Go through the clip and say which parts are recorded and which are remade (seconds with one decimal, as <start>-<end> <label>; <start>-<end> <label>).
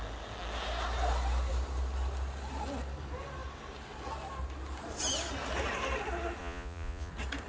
0.0-6.4 recorded; 6.4-7.1 remade; 7.1-7.5 recorded